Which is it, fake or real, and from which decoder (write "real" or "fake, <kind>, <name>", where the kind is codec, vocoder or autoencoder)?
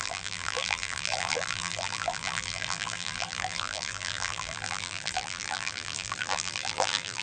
fake, vocoder, BigVGAN v2